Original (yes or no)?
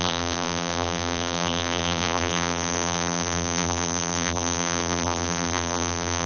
no